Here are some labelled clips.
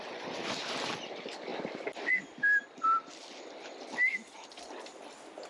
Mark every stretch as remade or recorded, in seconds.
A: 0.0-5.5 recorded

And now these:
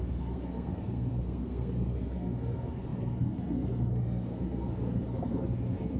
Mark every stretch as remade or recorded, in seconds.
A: 0.0-6.0 remade

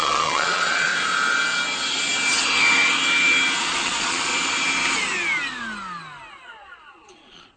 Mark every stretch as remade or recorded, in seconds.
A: 0.0-0.9 remade; 0.9-3.6 recorded; 3.6-4.3 remade; 4.3-6.3 recorded; 6.3-7.6 remade